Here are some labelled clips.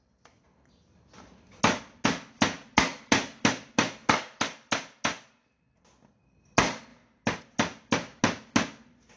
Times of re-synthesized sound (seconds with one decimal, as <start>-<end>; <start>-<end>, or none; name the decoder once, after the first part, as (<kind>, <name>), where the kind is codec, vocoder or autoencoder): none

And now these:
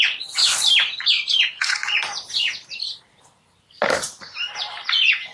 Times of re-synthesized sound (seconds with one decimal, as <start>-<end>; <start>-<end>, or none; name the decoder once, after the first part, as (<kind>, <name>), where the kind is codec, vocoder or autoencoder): 0.0-0.4 (vocoder, Vocos); 1.0-1.8

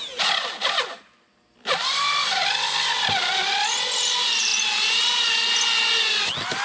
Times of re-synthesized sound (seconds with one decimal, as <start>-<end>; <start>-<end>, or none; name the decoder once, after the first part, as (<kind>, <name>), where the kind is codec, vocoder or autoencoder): none

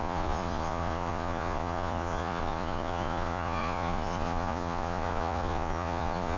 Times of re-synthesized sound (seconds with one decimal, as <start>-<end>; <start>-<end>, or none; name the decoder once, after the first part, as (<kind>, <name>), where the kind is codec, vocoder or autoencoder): 0.0-6.4 (vocoder, Vocos)

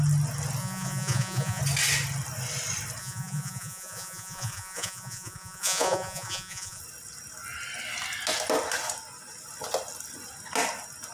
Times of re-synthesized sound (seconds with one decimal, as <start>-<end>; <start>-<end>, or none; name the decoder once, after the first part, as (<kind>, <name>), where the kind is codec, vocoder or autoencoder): 0.6-1.6 (vocoder, Vocos); 3.0-6.8